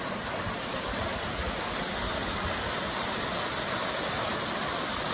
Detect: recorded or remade recorded